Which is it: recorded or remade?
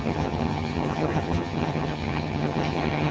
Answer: remade